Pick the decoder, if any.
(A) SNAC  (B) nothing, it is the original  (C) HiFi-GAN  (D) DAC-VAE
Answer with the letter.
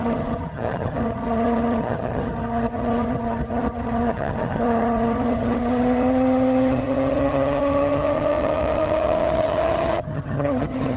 C